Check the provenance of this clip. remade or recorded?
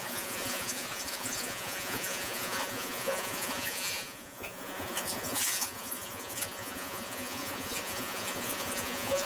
remade